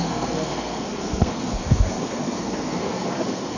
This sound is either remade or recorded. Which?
remade